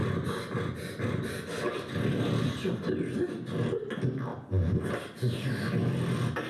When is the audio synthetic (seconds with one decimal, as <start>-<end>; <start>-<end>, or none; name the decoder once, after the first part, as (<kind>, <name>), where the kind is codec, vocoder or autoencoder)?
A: none